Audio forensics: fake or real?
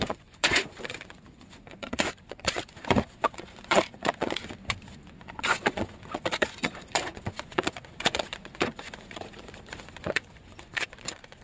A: fake